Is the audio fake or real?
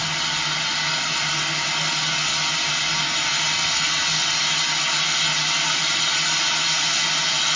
real